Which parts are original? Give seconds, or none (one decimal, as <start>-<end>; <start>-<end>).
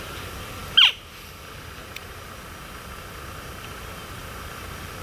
0.0-5.0